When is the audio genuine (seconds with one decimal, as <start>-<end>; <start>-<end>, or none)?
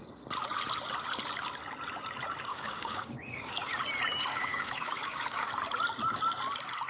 0.0-2.5; 3.5-4.3; 5.5-6.9